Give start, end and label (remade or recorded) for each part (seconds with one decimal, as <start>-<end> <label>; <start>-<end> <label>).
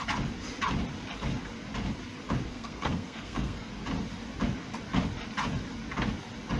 0.0-2.5 recorded; 2.5-3.7 remade; 3.7-6.6 recorded